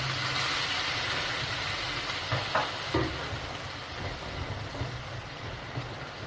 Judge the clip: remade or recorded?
recorded